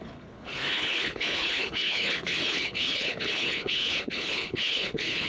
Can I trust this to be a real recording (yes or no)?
no